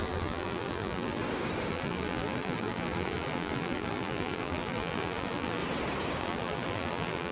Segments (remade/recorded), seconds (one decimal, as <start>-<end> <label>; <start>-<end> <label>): 0.0-1.2 remade; 1.2-1.7 recorded; 1.7-5.6 remade; 5.6-6.2 recorded; 6.2-7.3 remade